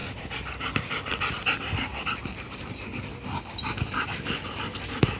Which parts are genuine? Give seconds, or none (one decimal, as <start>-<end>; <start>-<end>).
1.3-5.2